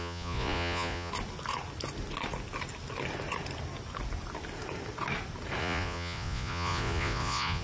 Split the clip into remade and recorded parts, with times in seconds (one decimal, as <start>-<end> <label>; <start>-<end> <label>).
0.0-1.1 remade; 1.1-5.6 recorded; 5.6-7.6 remade